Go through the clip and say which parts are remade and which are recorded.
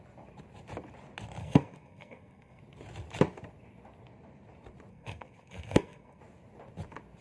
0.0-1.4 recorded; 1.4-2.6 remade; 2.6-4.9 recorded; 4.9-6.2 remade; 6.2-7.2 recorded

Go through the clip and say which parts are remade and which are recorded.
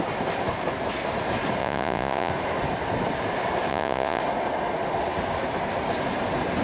0.0-1.6 recorded; 1.6-2.3 remade; 2.3-3.7 recorded; 3.7-4.2 remade; 4.2-6.6 recorded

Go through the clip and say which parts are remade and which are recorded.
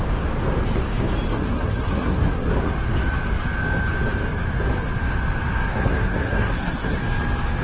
0.0-1.3 recorded; 1.3-2.5 remade; 2.5-5.7 recorded; 5.7-7.0 remade; 7.0-7.6 recorded